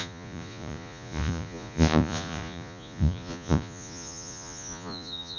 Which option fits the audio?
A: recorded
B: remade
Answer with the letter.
B